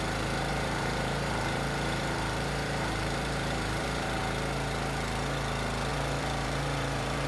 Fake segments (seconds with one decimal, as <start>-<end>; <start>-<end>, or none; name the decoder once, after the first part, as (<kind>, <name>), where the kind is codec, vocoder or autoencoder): 0.5-4.2 (vocoder, BigVGAN v2); 5.9-7.3